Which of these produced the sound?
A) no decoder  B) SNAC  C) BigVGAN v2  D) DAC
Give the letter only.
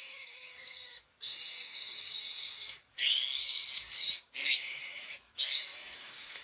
D